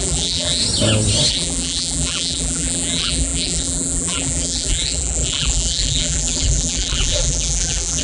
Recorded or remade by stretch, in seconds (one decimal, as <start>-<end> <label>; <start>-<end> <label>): 0.0-0.6 remade; 0.6-1.3 recorded; 1.3-8.0 remade